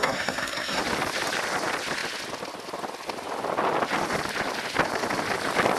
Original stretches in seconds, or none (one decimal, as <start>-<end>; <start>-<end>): 0.8-5.8